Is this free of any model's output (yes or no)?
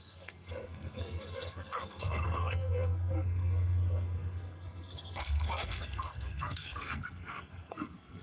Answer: no